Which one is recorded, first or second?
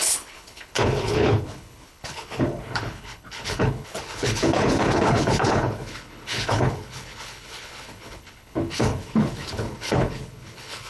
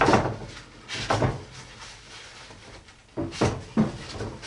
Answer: second